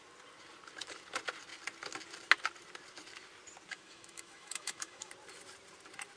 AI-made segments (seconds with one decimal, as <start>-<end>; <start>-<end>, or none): 3.7-5.1